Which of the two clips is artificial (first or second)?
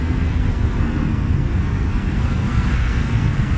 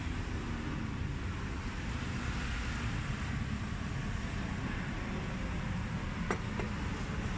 first